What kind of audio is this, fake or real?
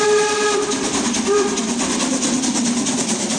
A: real